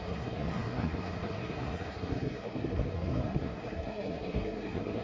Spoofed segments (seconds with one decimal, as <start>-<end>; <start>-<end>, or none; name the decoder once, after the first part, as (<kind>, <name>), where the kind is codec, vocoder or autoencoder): 0.0-5.0 (codec, SNAC)